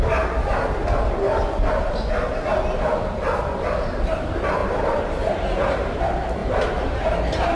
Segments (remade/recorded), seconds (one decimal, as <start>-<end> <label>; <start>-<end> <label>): 0.0-4.6 recorded; 4.6-6.0 remade; 6.0-6.4 recorded; 6.4-7.0 remade; 7.0-7.5 recorded